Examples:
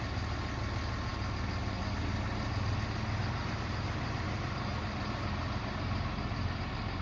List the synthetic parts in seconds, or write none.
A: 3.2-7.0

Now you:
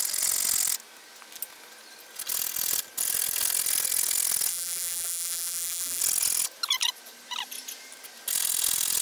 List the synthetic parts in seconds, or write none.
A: 4.5-6.0

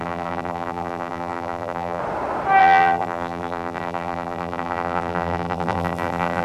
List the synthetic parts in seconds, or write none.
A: 0.0-2.0; 2.6-6.4

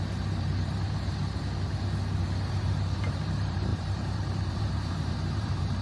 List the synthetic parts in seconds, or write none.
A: 0.0-1.2; 2.2-5.8

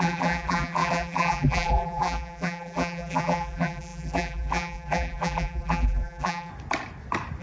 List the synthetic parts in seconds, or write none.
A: 0.0-6.5